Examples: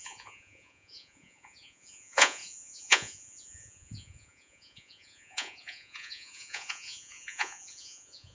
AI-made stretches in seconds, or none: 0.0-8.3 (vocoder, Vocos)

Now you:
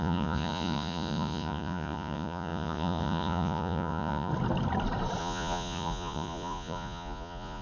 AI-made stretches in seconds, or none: 0.0-4.3 (vocoder, Vocos); 5.2-7.6

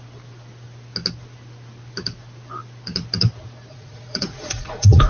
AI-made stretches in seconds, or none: 3.7-5.1 (vocoder, Vocos)

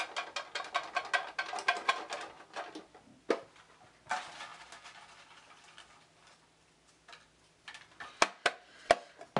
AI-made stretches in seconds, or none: none

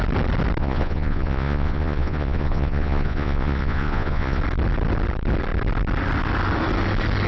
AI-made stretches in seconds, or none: 0.6-4.4 (vocoder, Vocos)